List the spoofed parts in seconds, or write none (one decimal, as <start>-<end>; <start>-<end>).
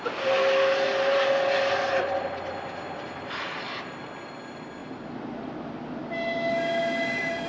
none